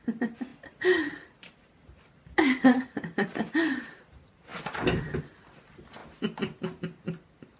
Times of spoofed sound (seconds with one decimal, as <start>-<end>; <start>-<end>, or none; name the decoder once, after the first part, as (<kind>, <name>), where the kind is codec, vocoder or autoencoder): 0.0-6.0 (vocoder, BigVGAN v2)